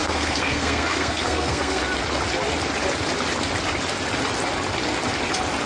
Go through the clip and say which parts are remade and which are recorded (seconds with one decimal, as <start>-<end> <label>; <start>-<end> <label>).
0.0-1.8 remade; 1.8-5.7 recorded